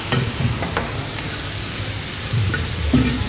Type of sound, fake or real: real